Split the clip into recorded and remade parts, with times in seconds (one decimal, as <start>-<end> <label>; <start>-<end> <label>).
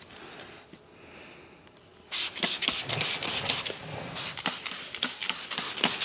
0.0-5.2 recorded; 5.2-6.0 remade